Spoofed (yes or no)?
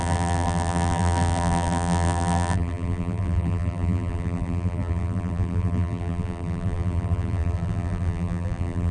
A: yes